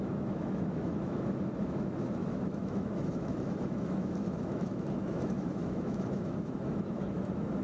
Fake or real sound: fake